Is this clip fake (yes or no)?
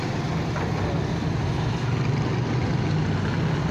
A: no